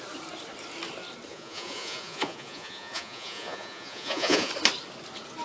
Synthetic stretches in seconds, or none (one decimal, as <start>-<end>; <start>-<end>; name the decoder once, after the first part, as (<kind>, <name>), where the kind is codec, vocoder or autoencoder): 1.3-4.5 (vocoder, Vocos)